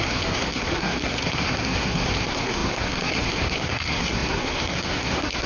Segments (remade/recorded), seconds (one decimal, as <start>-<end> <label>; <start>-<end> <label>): 0.0-5.5 remade